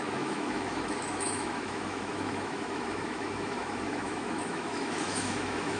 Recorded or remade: remade